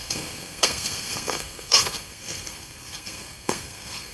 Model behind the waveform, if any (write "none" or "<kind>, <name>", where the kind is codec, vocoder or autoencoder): codec, SNAC